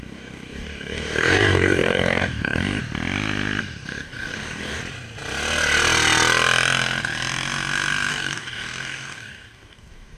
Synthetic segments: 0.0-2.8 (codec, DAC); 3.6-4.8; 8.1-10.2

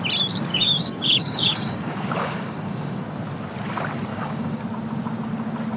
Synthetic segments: 0.5-3.0 (codec, DAC); 4.1-4.6

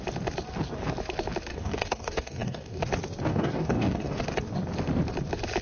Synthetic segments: 1.5-2.8 (codec, DAC); 3.3-4.2

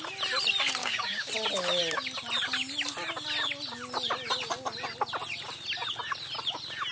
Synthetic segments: 0.8-1.3 (codec, DAC)

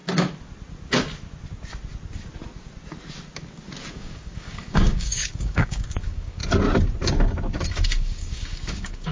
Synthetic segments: 3.9-6.4 (codec, DAC); 7.7-9.1

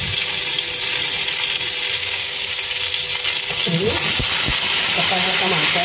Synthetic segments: 2.0-2.5 (codec, DAC)